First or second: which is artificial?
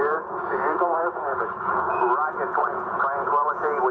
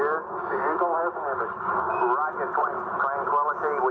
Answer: first